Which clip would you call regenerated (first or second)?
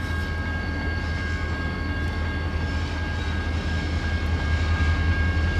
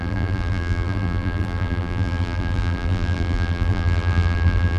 second